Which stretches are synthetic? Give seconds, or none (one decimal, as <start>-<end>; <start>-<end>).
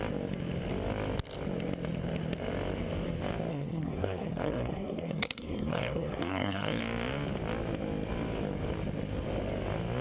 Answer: 3.5-6.8